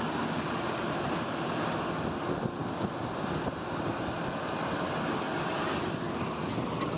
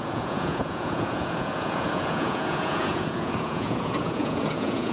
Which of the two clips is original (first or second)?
first